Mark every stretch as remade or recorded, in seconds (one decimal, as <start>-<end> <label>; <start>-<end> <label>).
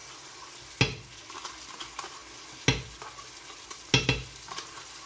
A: 0.0-0.5 remade; 0.5-5.1 recorded